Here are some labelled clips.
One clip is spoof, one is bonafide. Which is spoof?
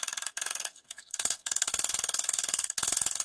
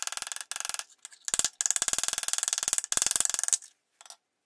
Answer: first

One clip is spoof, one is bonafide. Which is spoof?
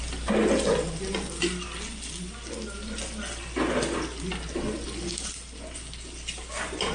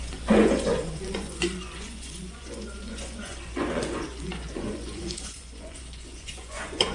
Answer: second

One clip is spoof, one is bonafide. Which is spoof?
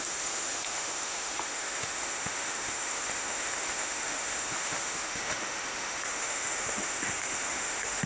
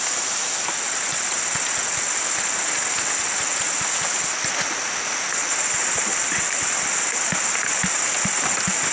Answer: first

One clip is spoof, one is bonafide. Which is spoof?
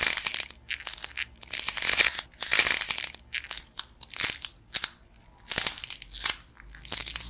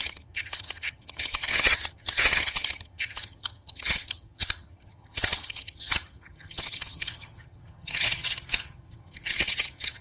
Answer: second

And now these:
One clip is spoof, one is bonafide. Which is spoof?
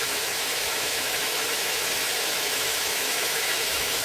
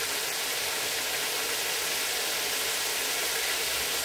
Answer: first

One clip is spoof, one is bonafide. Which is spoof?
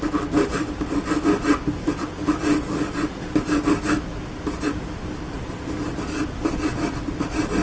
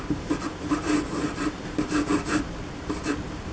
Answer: second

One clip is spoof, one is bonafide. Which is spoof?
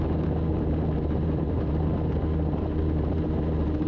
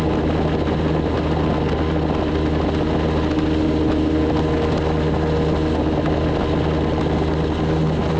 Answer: first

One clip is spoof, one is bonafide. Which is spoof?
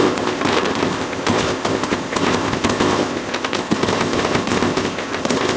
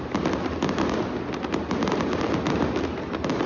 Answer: first